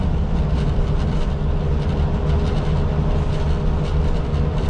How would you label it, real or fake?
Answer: fake